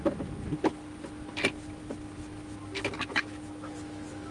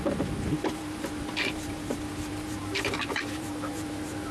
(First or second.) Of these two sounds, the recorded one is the first